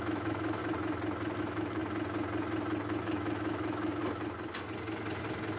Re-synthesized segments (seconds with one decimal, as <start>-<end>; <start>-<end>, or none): 0.0-0.6; 1.4-1.8; 3.0-4.0